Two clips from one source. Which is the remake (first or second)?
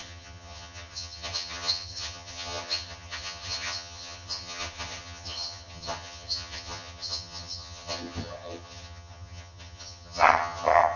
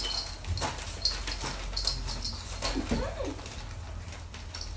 first